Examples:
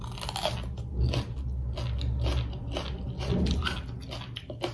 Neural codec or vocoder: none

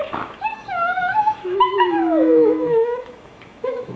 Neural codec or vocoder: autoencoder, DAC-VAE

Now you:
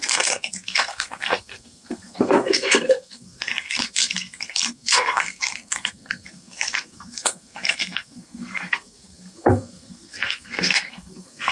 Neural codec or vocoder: codec, SNAC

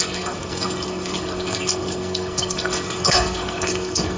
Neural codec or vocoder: codec, SNAC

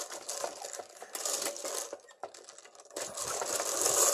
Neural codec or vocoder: none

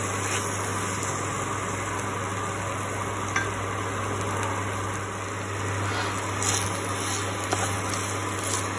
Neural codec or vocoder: none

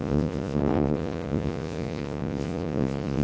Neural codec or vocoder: vocoder, Vocos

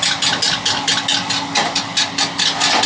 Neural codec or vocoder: none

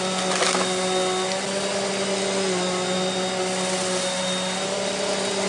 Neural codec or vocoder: none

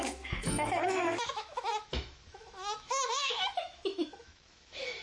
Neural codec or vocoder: autoencoder, DAC-VAE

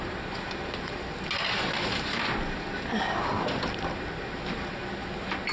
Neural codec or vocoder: none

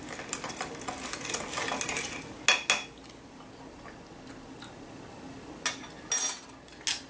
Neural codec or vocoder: none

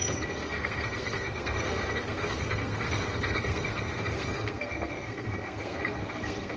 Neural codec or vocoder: codec, SNAC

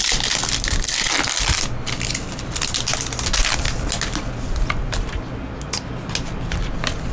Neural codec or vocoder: none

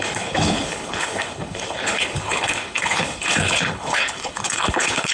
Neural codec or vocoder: codec, HILCodec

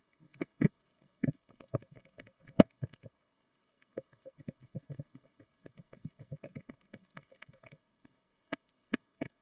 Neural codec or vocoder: codec, SNAC